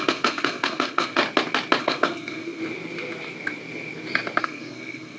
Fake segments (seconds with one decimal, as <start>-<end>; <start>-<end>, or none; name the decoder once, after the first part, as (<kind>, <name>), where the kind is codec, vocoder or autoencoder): 0.0-1.2 (codec, SNAC); 1.8-2.6; 4.4-5.2